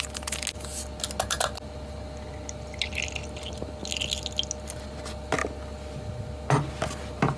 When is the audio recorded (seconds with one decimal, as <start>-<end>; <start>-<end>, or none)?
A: 0.0-7.4